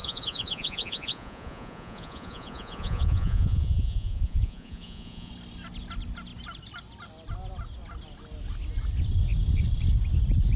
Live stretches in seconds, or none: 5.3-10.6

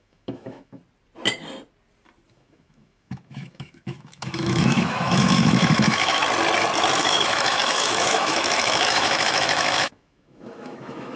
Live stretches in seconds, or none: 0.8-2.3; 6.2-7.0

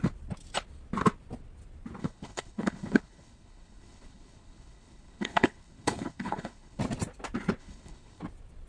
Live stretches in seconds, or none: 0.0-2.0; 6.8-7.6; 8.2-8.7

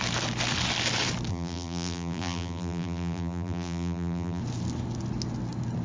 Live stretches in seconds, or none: 0.0-1.3; 4.4-5.8